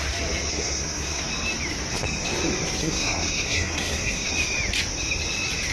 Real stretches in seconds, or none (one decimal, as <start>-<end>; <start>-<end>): 0.0-0.5; 1.2-2.8; 4.3-5.7